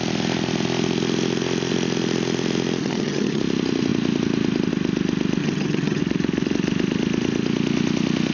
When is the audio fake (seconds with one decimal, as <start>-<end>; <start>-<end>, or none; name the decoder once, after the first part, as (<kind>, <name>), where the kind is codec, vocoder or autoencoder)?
2.8-3.4 (vocoder, HiFi-GAN); 5.4-6.0